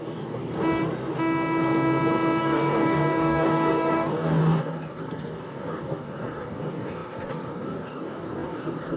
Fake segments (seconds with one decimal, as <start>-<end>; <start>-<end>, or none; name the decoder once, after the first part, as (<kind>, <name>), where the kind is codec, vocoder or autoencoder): 0.0-0.5 (codec, DAC); 2.4-9.0